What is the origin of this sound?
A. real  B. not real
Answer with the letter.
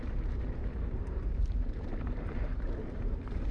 B